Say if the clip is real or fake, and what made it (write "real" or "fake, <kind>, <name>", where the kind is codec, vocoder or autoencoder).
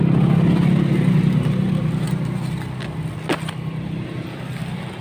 real